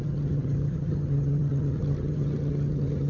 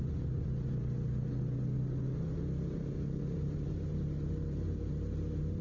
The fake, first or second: first